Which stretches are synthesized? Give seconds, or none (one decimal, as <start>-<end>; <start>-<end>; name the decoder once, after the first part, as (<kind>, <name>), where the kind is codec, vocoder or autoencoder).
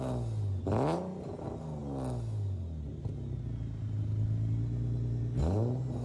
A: none